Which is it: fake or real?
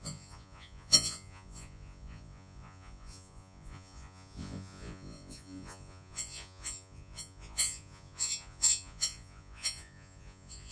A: fake